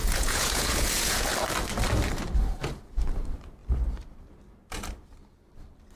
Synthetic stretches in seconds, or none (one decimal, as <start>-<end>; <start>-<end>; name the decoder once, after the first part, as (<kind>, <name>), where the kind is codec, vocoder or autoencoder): 0.0-1.3 (vocoder, Vocos)